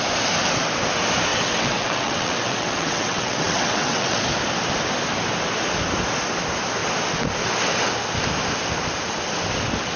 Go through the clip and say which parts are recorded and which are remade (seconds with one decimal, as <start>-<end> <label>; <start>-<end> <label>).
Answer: 0.0-1.3 recorded; 1.3-4.2 remade; 4.2-10.0 recorded